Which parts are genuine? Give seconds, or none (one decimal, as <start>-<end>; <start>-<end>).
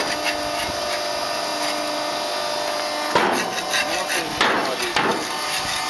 0.0-5.9